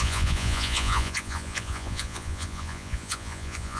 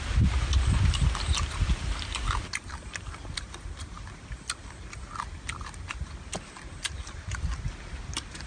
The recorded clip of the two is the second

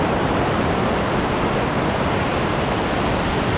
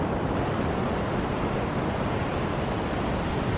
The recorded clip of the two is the first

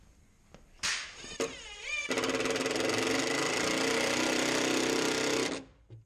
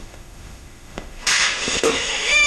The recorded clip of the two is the first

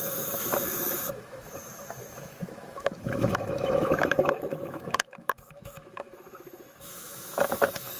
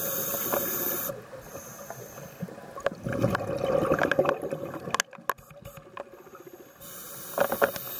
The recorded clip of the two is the second